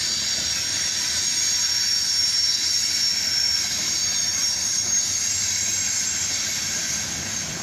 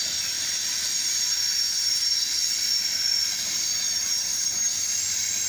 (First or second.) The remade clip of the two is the second